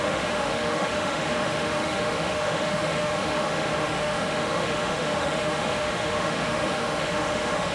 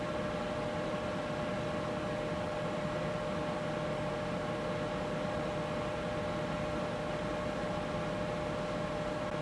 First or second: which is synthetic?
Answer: first